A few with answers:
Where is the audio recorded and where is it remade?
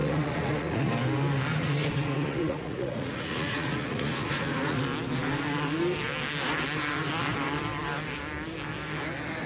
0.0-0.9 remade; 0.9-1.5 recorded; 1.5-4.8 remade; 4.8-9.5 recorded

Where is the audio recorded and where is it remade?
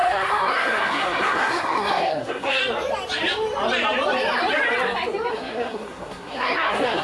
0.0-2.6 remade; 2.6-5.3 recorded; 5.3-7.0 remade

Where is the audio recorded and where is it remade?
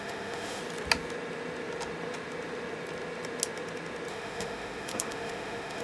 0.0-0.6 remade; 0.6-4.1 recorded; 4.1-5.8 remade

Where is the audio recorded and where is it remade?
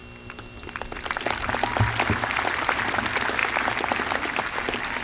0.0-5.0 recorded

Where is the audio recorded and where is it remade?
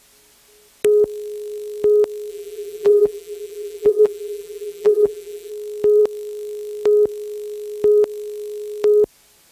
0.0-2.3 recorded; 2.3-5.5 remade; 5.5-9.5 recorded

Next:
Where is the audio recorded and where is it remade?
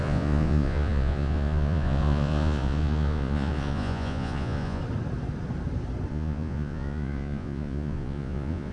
0.0-4.8 remade; 4.8-6.1 recorded; 6.1-8.7 remade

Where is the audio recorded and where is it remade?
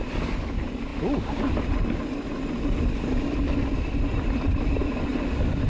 0.0-0.9 remade; 0.9-4.3 recorded; 4.3-5.7 remade